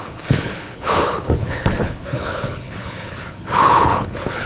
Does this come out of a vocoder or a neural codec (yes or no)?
yes